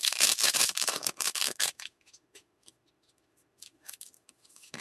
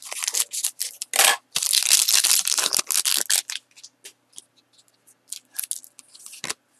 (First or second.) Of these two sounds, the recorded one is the second